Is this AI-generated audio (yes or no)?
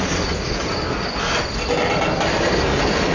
no